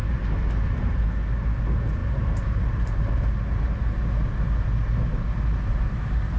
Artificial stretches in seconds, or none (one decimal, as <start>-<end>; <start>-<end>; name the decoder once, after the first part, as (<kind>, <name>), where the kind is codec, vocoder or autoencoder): 0.0-0.9 (vocoder, BigVGAN v2); 2.0-3.1